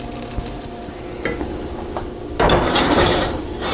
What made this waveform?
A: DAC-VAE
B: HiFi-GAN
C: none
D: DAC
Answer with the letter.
C